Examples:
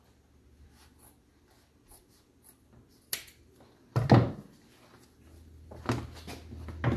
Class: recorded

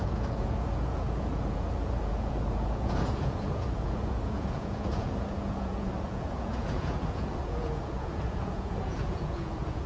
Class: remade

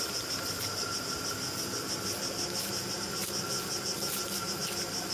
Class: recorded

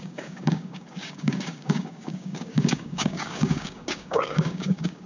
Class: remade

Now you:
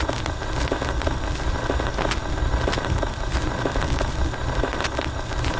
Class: recorded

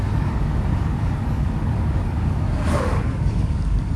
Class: remade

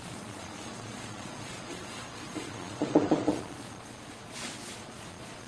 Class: remade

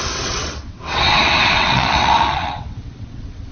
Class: remade